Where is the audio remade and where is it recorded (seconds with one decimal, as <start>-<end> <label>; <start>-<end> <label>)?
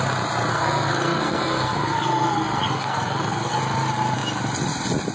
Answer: 0.0-0.5 recorded; 0.5-3.6 remade; 3.6-5.1 recorded